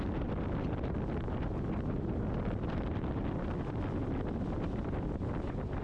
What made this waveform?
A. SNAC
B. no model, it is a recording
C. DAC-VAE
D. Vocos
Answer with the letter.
B